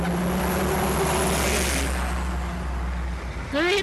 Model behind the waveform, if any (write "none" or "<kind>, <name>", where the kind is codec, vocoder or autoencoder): none